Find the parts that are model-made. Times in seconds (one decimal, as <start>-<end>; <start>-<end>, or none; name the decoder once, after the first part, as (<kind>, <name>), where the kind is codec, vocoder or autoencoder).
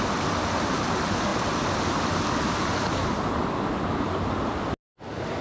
none